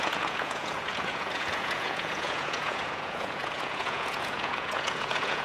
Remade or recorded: remade